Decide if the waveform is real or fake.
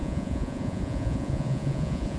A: fake